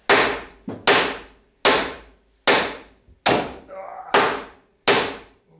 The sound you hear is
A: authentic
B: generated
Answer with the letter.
A